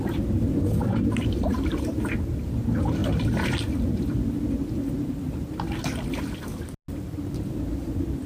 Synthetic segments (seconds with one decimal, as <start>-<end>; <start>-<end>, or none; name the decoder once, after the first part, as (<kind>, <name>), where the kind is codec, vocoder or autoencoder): 0.8-1.9 (vocoder, BigVGAN v2); 3.0-3.5